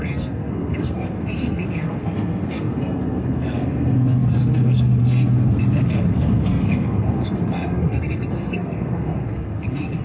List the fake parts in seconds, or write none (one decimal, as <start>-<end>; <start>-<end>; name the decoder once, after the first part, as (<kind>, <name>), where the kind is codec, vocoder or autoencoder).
0.0-10.0 (codec, SNAC)